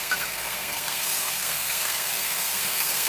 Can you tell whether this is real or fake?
fake